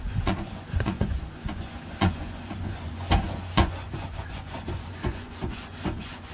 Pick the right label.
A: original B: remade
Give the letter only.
B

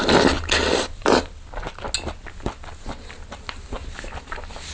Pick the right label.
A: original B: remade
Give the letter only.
A